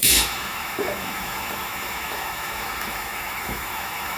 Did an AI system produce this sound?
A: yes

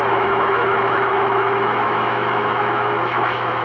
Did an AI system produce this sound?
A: yes